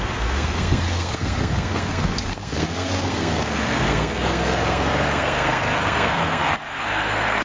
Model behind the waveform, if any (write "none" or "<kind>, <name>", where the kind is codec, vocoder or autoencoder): codec, SNAC